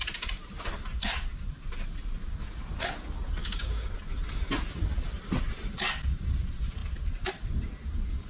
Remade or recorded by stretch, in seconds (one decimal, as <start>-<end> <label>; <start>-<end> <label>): 0.0-3.4 recorded; 3.4-3.9 remade; 3.9-8.3 recorded